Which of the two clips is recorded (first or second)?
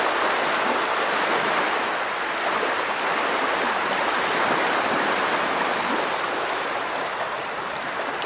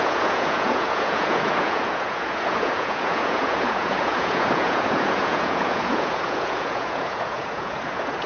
first